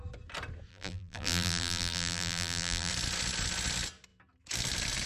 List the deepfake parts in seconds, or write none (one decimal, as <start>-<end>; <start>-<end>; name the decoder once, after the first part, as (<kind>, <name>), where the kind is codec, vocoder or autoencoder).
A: 0.7-2.9 (vocoder, BigVGAN v2)